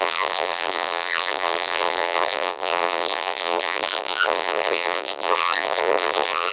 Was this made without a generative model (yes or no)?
no